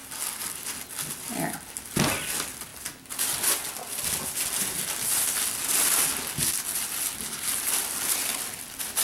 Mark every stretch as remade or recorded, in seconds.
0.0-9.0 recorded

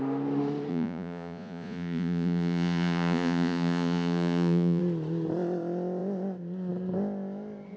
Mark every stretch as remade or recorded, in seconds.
0.0-0.7 recorded; 0.7-4.8 remade; 4.8-7.8 recorded

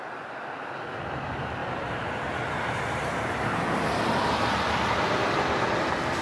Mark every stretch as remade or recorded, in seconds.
0.0-6.2 recorded

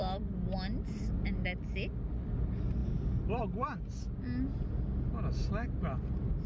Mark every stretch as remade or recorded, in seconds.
0.0-6.5 recorded

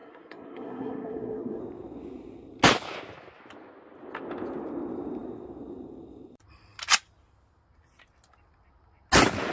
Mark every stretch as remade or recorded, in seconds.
0.0-1.6 remade; 1.6-9.5 recorded